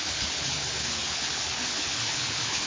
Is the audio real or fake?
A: fake